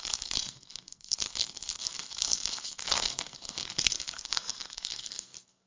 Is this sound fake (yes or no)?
yes